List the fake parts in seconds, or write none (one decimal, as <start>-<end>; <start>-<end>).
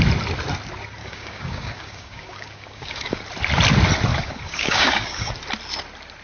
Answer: 1.0-3.2; 4.1-5.3